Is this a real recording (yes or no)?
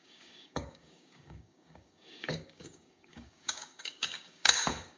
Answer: no